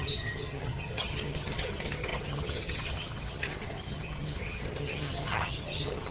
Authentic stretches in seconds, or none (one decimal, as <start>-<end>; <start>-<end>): none